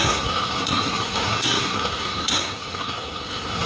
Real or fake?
fake